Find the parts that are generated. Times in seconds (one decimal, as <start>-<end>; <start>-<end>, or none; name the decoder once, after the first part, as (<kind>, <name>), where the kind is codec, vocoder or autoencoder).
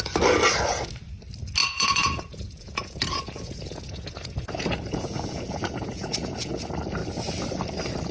1.6-6.5 (vocoder, Vocos)